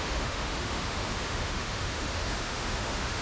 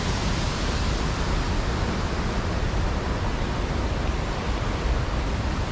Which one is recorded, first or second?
second